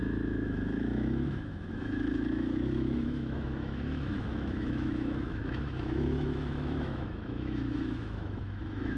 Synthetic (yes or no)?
yes